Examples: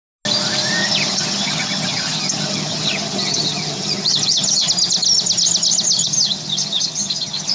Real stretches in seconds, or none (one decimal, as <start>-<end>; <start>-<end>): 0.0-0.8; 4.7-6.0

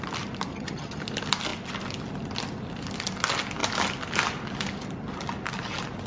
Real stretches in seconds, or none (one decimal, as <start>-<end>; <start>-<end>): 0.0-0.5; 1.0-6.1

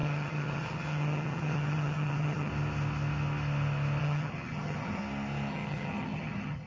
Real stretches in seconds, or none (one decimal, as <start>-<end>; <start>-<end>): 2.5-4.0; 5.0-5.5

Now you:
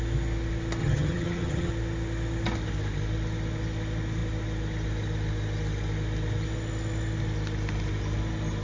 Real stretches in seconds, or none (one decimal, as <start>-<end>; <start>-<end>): 0.0-0.8; 1.7-8.6

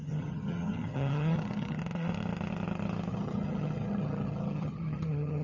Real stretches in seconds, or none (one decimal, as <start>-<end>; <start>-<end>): 1.8-3.1

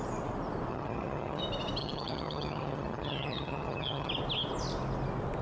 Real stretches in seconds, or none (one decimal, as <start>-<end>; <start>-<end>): 0.0-0.7; 1.4-1.8; 4.1-5.4

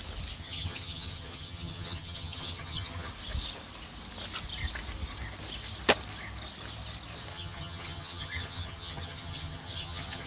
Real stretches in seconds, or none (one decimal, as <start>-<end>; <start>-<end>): 0.0-0.4; 3.1-7.3